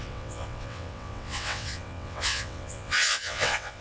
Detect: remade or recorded remade